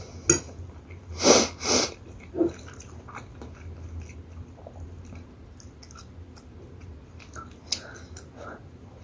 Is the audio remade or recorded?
recorded